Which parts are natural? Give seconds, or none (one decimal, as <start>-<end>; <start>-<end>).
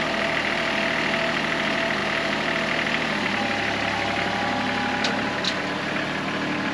0.0-6.7